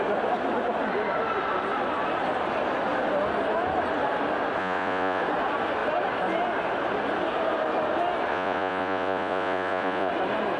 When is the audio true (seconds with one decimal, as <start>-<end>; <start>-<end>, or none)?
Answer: 0.0-4.6; 5.2-8.3; 10.1-10.6